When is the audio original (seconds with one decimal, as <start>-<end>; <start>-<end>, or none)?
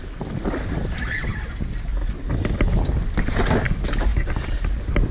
0.0-5.1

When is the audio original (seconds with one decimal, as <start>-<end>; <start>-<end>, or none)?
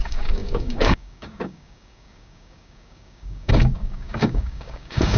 none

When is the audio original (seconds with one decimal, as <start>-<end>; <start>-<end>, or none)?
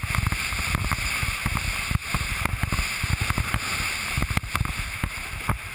0.0-5.7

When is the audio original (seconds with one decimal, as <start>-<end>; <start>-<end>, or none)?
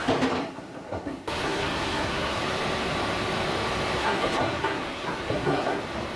0.0-0.4; 2.4-4.0; 5.8-6.2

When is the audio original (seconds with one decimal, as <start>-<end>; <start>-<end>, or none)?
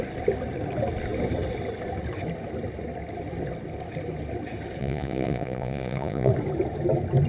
0.0-4.8; 6.3-7.3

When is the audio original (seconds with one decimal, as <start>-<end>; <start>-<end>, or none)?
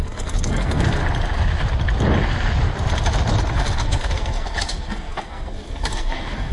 1.0-3.5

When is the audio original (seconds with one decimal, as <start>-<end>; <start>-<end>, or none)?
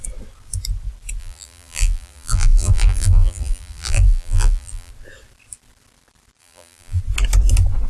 0.0-1.2; 4.9-6.4; 7.0-7.9